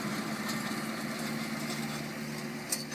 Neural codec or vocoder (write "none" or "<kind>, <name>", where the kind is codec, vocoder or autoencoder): none